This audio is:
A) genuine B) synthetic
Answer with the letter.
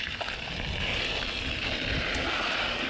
A